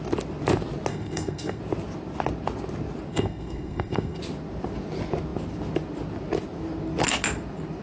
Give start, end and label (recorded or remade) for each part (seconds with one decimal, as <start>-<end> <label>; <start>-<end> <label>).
0.0-0.9 recorded; 0.9-1.6 remade; 1.6-3.1 recorded; 3.1-4.2 remade; 4.2-7.8 recorded